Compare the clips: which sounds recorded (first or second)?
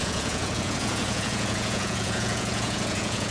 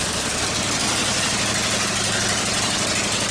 second